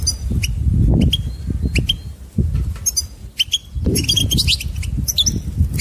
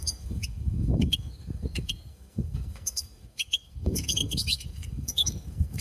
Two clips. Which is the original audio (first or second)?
first